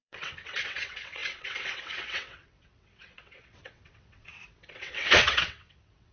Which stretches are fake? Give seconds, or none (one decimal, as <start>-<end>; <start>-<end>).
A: 0.0-6.1